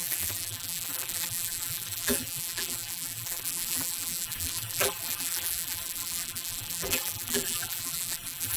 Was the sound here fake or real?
fake